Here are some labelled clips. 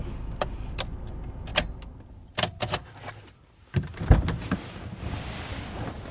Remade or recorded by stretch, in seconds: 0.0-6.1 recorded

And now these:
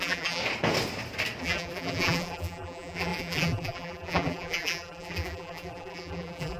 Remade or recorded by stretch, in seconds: 0.0-0.4 remade; 0.4-1.4 recorded; 1.4-6.6 remade